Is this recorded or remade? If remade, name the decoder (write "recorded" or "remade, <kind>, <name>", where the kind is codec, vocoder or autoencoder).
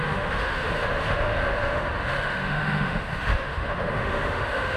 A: remade, autoencoder, DAC-VAE